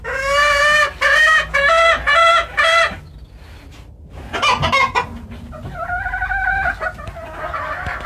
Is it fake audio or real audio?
real